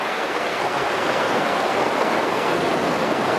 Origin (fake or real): fake